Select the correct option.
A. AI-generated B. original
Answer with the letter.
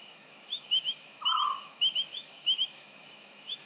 A